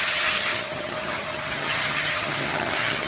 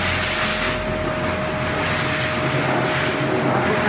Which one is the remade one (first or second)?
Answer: first